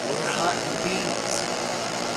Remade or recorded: remade